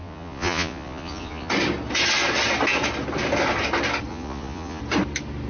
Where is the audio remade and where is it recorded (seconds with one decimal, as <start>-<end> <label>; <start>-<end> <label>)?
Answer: 0.0-1.5 remade; 1.5-4.1 recorded; 4.1-4.8 remade; 4.8-5.5 recorded